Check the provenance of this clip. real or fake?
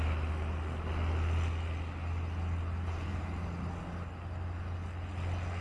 real